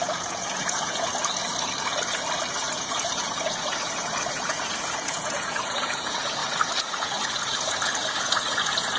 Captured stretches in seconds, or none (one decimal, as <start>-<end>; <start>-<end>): 1.1-2.5